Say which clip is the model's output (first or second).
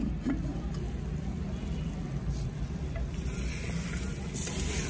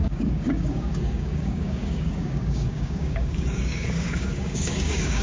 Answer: second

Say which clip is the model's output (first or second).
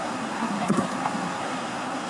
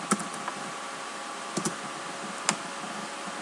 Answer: first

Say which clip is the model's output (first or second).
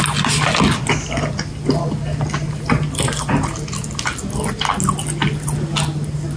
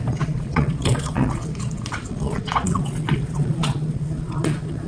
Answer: second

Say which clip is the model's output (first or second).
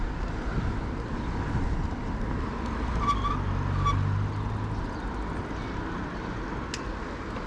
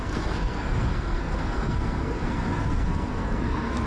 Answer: second